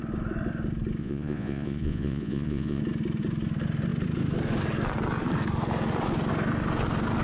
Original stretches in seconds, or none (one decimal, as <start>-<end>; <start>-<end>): 0.0-1.0; 2.8-7.2